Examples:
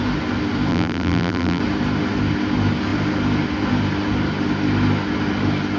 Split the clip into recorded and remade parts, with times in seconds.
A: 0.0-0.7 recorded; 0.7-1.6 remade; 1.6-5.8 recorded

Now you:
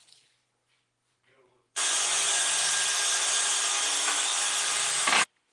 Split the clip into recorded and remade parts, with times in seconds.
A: 0.0-2.7 remade; 2.7-5.5 recorded

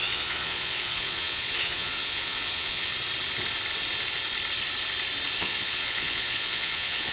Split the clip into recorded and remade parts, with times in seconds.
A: 0.0-2.9 remade; 2.9-5.4 recorded; 5.4-7.1 remade

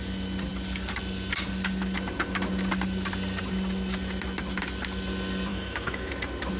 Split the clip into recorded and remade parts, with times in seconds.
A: 0.0-5.5 recorded; 5.5-6.1 remade; 6.1-6.6 recorded

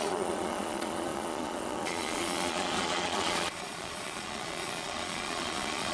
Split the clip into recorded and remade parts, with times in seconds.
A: 0.0-5.9 remade

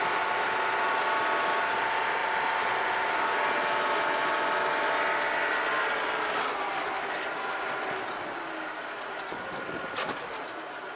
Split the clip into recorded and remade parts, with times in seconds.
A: 0.0-11.0 recorded

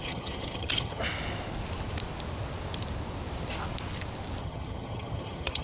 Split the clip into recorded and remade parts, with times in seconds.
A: 0.0-1.0 remade; 1.0-4.4 recorded; 4.4-5.6 remade